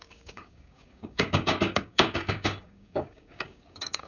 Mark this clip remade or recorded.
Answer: remade